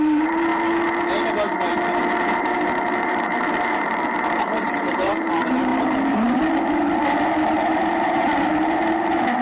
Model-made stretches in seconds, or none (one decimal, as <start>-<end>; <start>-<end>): 0.0-0.5; 2.0-9.4